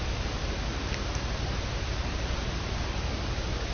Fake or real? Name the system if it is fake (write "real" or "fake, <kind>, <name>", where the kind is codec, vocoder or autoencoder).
real